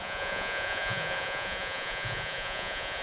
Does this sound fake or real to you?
fake